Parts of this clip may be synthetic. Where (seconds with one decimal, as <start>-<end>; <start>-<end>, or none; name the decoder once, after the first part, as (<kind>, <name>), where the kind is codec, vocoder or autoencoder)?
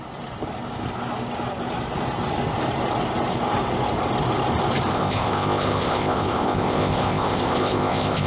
4.9-8.3 (codec, ZipCodec)